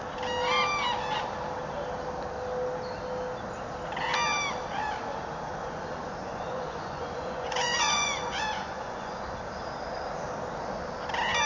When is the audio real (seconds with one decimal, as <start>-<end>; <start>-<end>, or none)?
0.0-5.6; 9.4-11.5